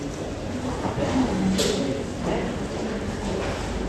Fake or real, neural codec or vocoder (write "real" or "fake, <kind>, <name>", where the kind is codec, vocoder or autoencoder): real